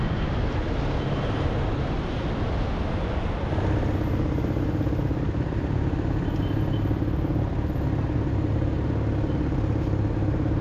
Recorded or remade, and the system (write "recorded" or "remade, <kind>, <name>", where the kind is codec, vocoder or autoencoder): recorded